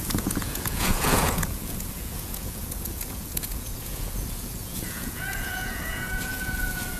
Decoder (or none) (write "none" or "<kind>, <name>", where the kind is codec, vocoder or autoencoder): vocoder, Vocos